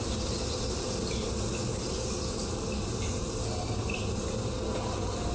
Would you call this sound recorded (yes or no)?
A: yes